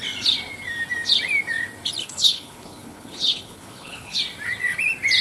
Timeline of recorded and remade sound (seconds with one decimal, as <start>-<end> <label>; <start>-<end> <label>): 0.0-2.0 recorded; 2.0-4.2 remade; 4.2-5.2 recorded